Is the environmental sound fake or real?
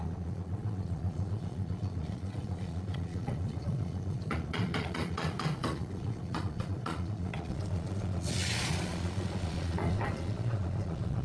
fake